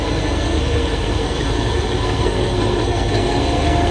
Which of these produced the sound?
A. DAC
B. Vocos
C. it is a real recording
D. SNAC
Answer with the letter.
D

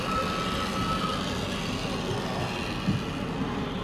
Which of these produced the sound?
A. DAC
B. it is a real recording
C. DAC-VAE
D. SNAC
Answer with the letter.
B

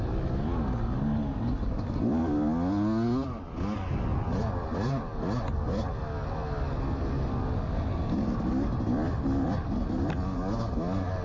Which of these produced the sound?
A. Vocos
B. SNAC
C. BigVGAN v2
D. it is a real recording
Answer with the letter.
D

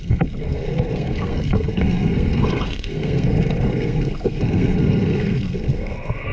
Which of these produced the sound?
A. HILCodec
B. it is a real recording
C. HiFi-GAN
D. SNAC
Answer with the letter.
D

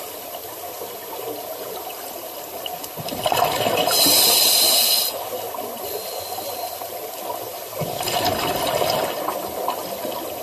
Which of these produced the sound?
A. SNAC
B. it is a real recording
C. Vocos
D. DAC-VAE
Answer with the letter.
B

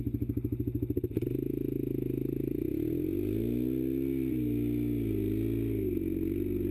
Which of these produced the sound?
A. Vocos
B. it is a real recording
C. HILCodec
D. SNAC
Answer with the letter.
B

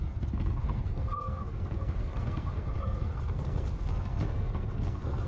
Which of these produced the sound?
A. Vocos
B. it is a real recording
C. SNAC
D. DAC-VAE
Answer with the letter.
C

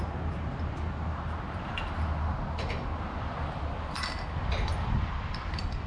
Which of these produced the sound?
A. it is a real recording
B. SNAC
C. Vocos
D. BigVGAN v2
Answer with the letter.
A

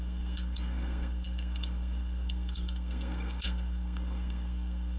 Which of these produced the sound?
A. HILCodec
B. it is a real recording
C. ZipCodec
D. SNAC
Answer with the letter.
D